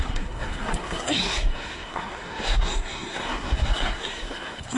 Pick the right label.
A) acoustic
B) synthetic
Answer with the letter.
B